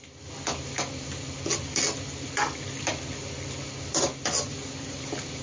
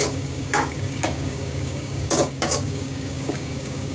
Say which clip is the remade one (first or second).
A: second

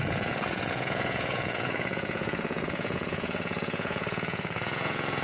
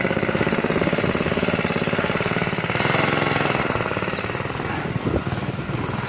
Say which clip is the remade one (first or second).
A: first